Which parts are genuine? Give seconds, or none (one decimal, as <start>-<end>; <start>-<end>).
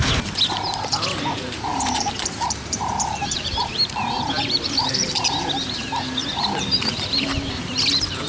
0.0-1.7; 5.1-6.2; 7.5-8.3